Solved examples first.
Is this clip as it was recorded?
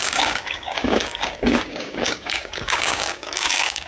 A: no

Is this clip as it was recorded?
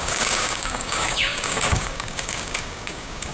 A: no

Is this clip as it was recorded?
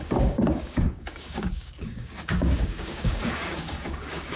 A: no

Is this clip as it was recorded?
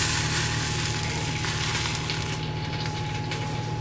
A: yes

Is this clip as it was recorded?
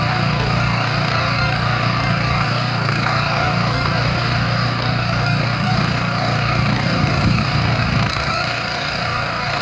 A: no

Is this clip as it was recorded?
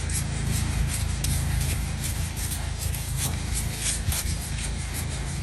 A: no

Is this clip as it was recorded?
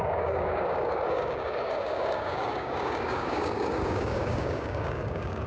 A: no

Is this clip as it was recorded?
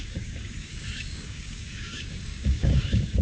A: no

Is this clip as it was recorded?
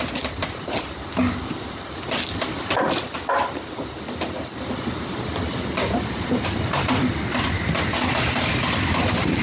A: yes